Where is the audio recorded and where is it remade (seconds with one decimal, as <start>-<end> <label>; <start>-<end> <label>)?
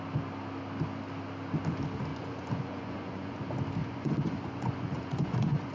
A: 0.0-2.1 recorded; 2.1-3.4 remade; 3.4-3.8 recorded; 3.8-5.7 remade